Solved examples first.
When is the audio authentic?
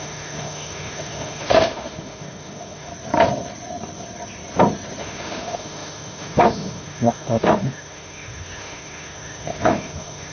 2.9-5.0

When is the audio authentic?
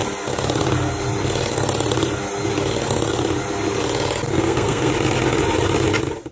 0.0-4.3; 4.9-6.3